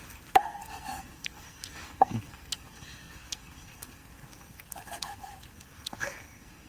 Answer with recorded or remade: remade